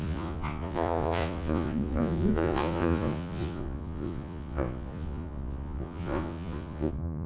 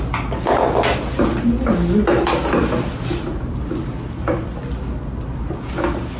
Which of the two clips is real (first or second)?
second